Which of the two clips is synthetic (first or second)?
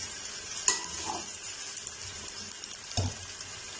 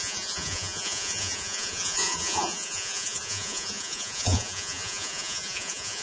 second